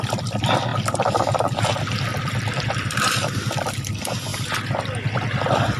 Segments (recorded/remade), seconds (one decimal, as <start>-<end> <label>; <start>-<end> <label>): 0.0-2.1 recorded; 2.1-3.9 remade; 3.9-5.8 recorded

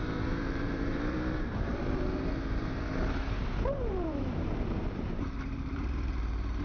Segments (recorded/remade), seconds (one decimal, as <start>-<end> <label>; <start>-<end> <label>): 0.0-6.6 remade

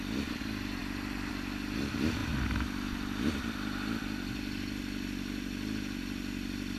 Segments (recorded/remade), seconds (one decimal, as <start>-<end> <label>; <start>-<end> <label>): 0.0-0.8 recorded; 0.8-1.3 remade; 1.3-6.8 recorded

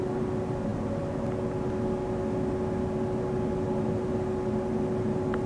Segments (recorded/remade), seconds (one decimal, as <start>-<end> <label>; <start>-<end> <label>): 0.0-5.5 recorded

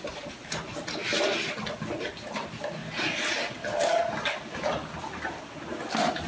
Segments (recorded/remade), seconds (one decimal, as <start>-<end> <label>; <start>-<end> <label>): 0.0-2.8 recorded; 2.8-5.4 remade; 5.4-6.3 recorded

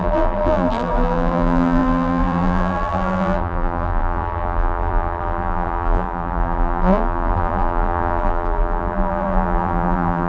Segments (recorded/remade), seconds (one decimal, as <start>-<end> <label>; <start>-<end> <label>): 0.0-10.3 remade

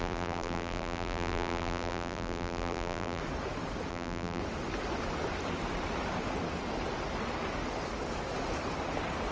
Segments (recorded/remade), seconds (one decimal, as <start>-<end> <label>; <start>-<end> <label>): 0.0-3.2 remade; 3.2-3.9 recorded; 3.9-4.4 remade; 4.4-9.3 recorded